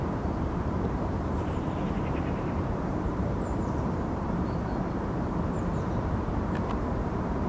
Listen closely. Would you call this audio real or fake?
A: fake